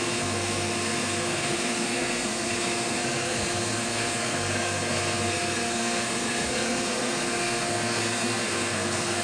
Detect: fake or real fake